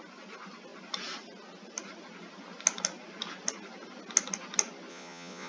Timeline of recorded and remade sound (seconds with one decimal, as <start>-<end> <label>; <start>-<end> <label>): 0.0-4.9 recorded; 4.9-5.5 remade